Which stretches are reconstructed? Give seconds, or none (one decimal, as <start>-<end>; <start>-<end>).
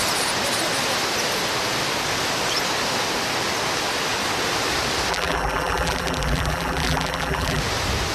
5.1-7.6